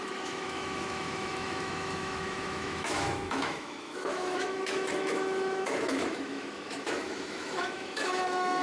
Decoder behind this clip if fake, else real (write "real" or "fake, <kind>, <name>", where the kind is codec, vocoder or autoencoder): fake, autoencoder, DAC-VAE